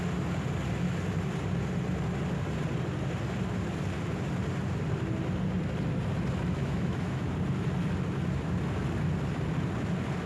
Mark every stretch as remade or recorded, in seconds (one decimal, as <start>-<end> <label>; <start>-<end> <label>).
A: 0.0-6.6 recorded; 6.6-7.3 remade; 7.3-10.3 recorded